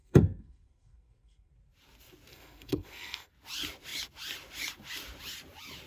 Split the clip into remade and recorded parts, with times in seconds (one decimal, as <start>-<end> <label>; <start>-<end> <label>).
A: 0.0-1.5 remade; 1.5-2.3 recorded; 2.3-3.3 remade; 3.3-5.9 recorded